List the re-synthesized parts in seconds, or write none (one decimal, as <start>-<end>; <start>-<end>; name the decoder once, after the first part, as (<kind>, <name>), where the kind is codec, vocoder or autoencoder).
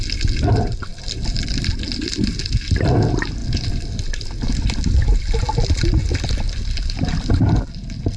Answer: none